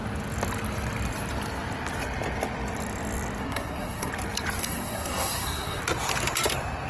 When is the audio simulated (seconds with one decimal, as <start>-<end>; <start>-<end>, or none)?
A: 3.4-4.1; 4.6-5.8